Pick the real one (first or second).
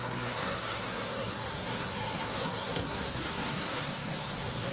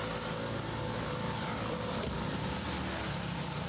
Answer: second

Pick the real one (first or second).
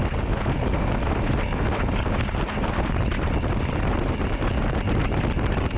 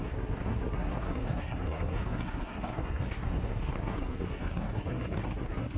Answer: first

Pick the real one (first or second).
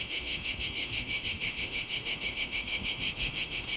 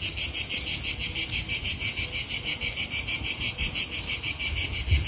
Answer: second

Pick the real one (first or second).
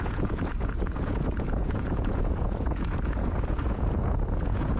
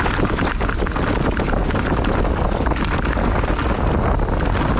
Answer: second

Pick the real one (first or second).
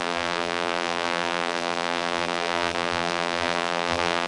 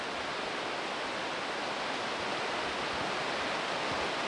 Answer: second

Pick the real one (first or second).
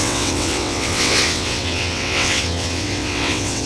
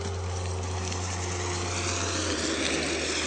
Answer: second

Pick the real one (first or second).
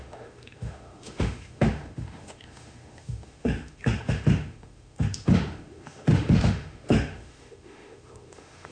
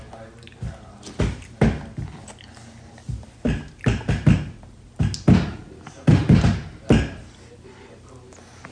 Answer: second